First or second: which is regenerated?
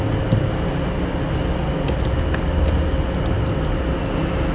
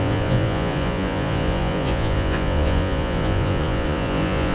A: second